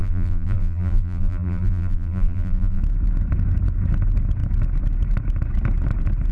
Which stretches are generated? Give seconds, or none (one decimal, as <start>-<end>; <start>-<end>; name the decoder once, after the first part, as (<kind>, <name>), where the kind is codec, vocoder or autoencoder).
0.0-2.8 (vocoder, BigVGAN v2)